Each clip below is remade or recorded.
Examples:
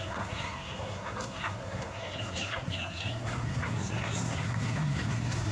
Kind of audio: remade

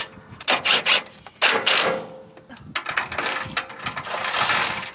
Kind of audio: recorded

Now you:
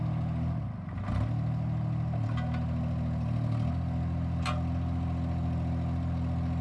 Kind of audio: recorded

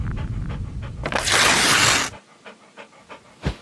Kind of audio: recorded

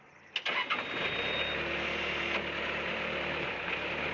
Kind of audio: recorded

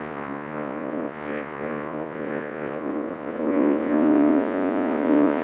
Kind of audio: remade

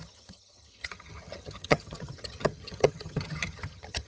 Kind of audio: remade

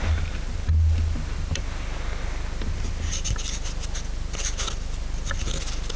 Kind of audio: remade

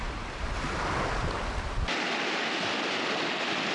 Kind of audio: recorded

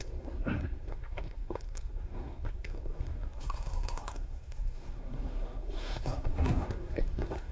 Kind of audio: remade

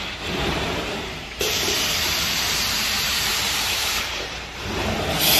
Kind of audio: remade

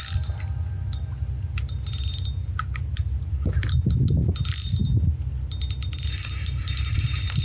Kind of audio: recorded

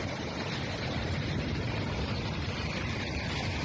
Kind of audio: recorded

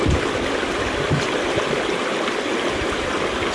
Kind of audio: recorded